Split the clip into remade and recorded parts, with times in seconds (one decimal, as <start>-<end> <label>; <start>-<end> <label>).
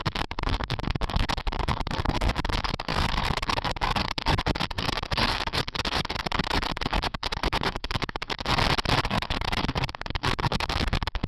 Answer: 0.0-8.5 remade; 8.5-9.0 recorded; 9.0-11.3 remade